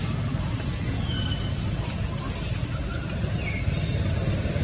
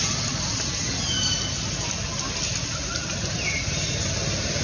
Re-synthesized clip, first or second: first